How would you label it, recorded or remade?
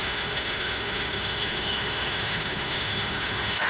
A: remade